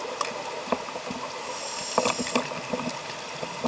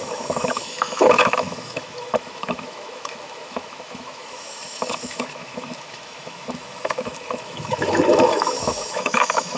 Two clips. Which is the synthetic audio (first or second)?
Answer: second